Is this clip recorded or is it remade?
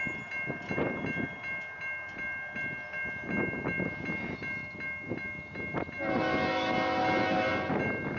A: recorded